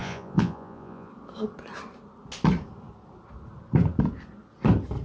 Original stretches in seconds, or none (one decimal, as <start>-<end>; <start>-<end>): 1.1-5.0